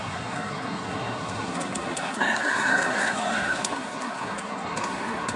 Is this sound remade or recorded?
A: remade